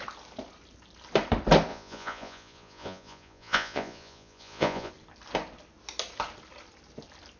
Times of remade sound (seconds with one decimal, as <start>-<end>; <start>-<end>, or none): 1.7-4.9